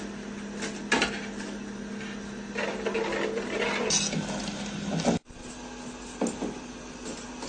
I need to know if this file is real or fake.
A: real